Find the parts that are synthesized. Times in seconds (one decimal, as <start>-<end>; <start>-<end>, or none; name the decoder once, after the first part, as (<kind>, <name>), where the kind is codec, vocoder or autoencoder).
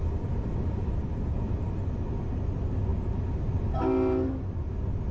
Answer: none